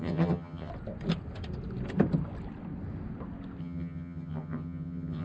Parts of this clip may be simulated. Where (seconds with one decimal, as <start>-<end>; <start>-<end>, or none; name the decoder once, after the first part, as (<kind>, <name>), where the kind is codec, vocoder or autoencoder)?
0.0-0.7 (vocoder, HiFi-GAN); 3.6-5.2